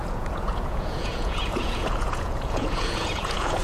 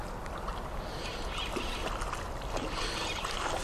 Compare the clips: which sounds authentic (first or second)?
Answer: second